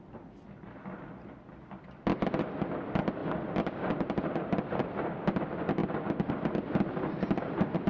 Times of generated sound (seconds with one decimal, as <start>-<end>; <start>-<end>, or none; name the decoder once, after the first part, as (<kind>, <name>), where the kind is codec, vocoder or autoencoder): 3.2-4.4 (vocoder, BigVGAN v2)